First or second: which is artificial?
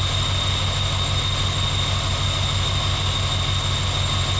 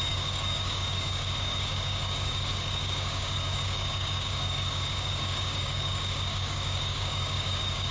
second